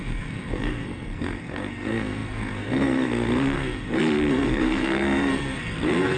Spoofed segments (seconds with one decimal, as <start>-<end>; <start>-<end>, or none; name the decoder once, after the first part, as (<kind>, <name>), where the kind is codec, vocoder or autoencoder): 0.0-6.2 (codec, SNAC)